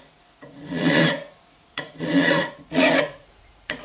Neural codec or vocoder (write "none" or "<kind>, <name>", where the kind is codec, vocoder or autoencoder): vocoder, Vocos